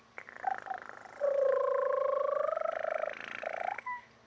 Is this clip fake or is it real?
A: real